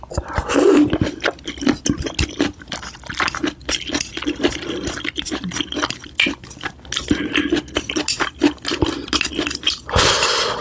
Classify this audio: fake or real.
real